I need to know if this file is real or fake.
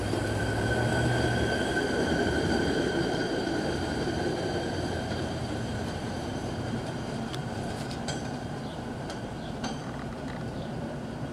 fake